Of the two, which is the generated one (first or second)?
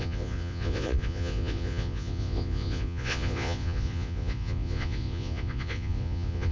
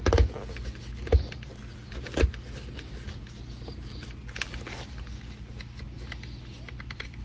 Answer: first